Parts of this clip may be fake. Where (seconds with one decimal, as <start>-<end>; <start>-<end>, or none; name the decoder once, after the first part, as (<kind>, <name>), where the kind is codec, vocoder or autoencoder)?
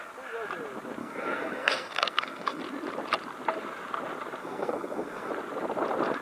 1.0-2.6 (codec, SNAC); 4.4-5.3